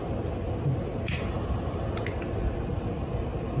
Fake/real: real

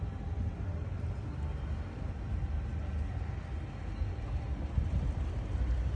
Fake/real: real